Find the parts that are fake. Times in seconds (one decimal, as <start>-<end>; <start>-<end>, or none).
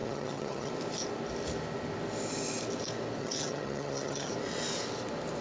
0.0-0.7; 3.2-4.3